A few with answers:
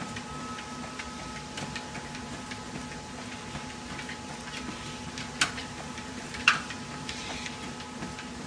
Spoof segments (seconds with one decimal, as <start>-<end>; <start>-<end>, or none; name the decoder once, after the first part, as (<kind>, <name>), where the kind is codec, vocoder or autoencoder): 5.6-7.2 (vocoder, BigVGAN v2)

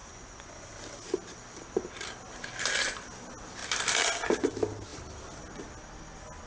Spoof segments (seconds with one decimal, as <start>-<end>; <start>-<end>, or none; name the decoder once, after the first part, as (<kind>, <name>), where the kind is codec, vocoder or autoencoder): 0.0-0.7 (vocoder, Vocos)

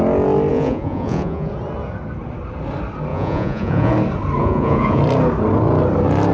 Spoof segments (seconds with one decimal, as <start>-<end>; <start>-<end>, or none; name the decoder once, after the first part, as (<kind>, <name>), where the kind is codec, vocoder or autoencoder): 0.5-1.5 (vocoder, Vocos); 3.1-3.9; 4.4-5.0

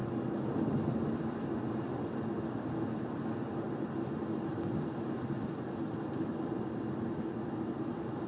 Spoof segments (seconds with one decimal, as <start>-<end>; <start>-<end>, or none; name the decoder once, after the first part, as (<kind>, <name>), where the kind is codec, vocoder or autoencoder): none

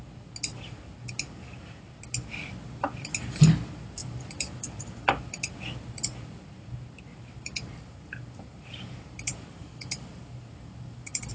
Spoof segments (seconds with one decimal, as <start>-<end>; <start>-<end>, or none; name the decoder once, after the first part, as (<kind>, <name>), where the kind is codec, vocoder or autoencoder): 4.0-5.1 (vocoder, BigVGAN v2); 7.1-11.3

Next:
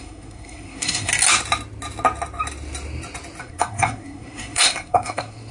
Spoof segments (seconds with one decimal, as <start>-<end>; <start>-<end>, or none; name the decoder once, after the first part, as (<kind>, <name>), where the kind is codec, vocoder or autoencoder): 0.0-1.1 (codec, SNAC); 3.4-5.5

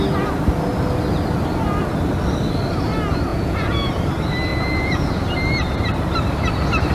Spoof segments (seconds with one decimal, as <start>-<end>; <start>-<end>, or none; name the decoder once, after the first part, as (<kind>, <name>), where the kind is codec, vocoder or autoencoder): 3.3-3.9 (vocoder, Vocos); 4.5-5.1